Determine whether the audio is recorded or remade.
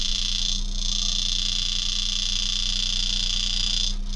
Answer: recorded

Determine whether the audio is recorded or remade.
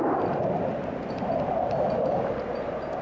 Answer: recorded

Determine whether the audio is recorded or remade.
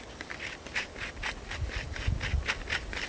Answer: remade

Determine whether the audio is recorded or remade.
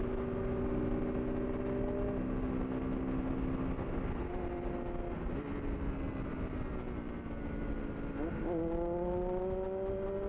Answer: recorded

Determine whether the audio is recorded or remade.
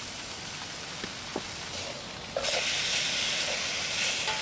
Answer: recorded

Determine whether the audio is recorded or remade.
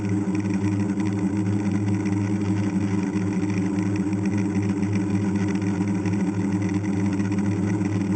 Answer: recorded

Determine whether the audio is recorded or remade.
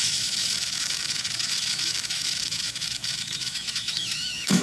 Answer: remade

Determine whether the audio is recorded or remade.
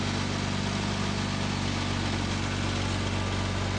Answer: recorded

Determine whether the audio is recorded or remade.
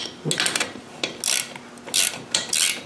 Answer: recorded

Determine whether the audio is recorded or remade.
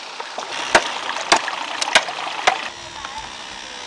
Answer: recorded